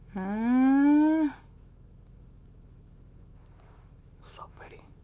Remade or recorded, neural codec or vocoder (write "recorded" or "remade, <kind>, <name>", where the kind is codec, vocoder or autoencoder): remade, autoencoder, DAC-VAE